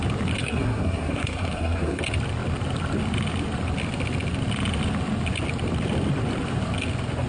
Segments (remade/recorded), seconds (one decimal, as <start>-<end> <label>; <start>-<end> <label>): 0.0-0.4 recorded; 0.4-2.0 remade; 2.0-7.3 recorded